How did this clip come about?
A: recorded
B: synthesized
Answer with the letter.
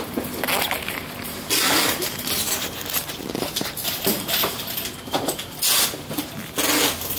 A